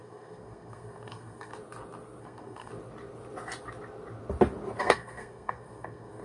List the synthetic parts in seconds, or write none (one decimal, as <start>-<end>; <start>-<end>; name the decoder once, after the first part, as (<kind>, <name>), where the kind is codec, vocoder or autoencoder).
0.0-1.5 (codec, SNAC); 2.2-2.7; 4.8-6.2

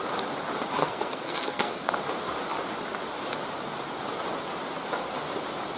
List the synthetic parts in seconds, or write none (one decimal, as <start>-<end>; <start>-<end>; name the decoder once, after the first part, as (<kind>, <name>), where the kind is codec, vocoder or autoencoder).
0.8-1.9 (codec, SNAC)

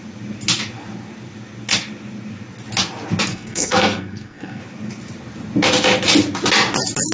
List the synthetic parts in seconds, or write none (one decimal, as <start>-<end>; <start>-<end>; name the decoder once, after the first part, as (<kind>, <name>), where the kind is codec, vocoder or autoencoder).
3.3-4.6 (codec, SNAC)